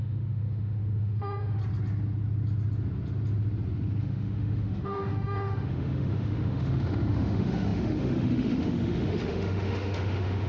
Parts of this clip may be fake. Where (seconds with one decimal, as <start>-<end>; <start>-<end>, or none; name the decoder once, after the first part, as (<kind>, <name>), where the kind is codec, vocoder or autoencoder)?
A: 0.0-1.6 (autoencoder, DAC-VAE); 4.0-10.5